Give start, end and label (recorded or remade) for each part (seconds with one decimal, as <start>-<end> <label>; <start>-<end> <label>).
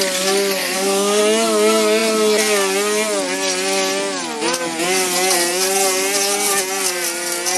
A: 0.0-0.6 recorded; 0.6-1.2 remade; 1.2-7.6 recorded